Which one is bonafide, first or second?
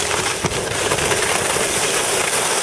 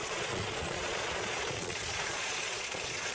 first